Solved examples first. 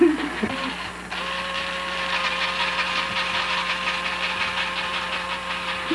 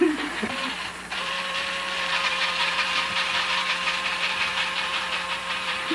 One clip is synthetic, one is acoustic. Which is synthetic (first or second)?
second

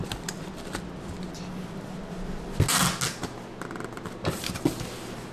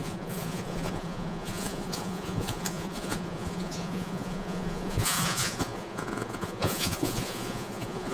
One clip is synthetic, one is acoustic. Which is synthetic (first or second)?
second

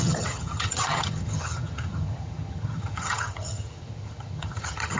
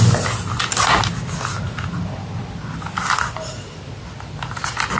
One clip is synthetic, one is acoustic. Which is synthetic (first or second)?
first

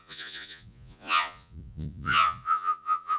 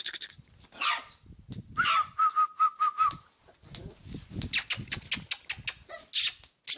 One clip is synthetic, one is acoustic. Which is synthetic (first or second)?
first